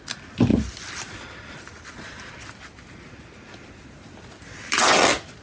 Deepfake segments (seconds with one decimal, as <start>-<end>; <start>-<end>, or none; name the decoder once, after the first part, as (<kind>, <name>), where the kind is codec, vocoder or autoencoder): none